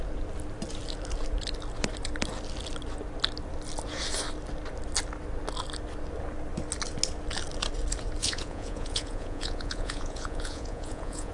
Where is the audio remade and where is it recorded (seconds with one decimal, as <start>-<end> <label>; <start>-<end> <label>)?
0.0-8.2 recorded; 8.2-11.3 remade